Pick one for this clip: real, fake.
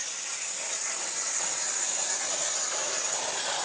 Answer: real